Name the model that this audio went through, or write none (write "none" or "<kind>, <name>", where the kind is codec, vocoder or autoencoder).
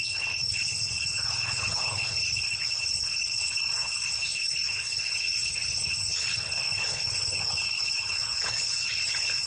codec, HILCodec